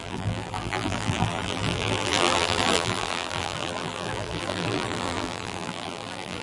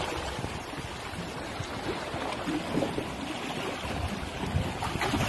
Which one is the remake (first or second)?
first